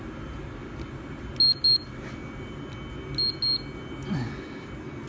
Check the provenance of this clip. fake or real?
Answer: real